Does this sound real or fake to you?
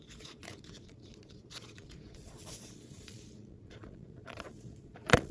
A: fake